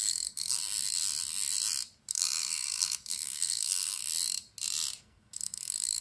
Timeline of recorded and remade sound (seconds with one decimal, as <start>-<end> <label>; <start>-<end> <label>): 0.0-0.6 remade; 0.6-2.1 recorded; 2.1-4.0 remade; 4.0-5.0 recorded; 5.0-6.0 remade